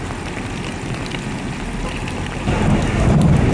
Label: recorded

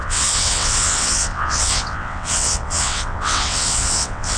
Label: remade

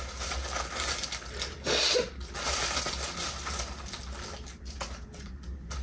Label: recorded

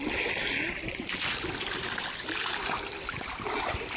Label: recorded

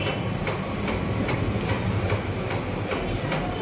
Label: recorded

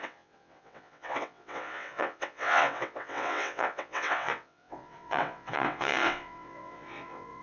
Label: remade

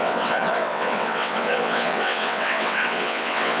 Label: remade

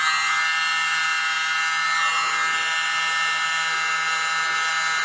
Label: recorded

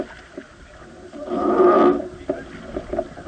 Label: recorded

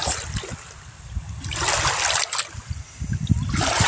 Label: recorded